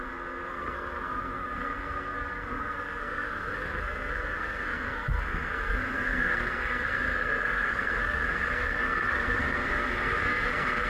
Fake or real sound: fake